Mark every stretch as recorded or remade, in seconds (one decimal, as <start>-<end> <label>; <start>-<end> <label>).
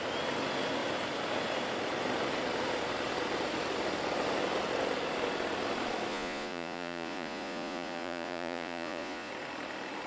0.0-6.1 recorded; 6.1-9.3 remade; 9.3-10.1 recorded